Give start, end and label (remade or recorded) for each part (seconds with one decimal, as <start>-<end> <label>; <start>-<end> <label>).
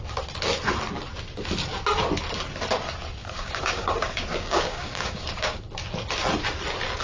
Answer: 0.0-3.2 recorded; 3.2-5.6 remade; 5.6-7.0 recorded